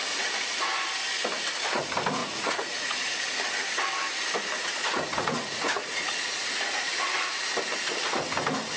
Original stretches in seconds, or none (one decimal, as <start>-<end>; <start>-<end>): 0.0-2.2; 3.1-4.6; 7.3-8.8